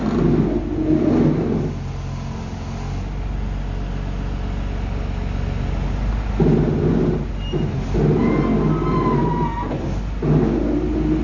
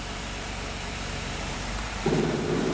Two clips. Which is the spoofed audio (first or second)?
second